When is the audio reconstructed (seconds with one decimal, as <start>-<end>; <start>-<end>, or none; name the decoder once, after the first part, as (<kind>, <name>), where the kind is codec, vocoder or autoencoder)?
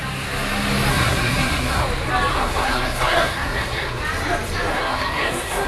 0.9-1.8 (codec, SNAC); 2.3-4.0; 4.7-5.7